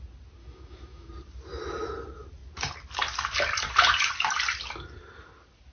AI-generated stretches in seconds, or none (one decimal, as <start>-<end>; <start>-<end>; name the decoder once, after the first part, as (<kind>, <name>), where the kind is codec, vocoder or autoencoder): 0.4-1.1 (autoencoder, DAC-VAE)